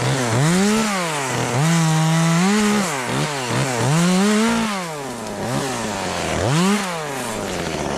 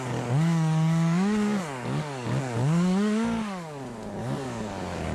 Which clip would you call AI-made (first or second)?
second